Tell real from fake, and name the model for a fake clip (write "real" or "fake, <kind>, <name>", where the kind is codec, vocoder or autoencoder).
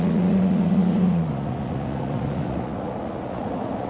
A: fake, vocoder, Vocos